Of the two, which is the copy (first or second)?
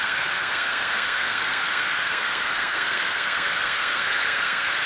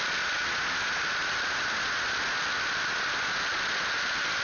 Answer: first